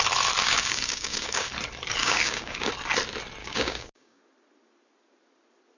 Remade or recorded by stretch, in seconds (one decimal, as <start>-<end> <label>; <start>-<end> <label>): 0.0-0.4 recorded; 0.4-1.5 remade; 1.5-2.0 recorded; 2.0-2.7 remade; 2.7-3.4 recorded; 3.4-4.2 remade; 4.2-5.8 recorded